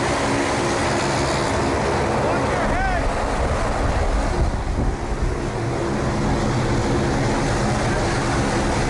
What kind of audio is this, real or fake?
real